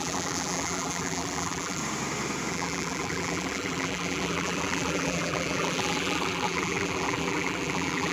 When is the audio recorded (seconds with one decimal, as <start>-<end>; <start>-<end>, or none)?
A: 1.8-2.5